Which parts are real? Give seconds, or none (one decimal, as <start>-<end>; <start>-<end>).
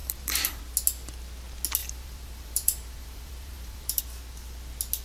0.6-1.8; 4.0-5.0